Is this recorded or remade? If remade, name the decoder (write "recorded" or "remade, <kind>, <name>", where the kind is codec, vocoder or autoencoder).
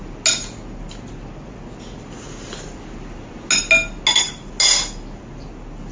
recorded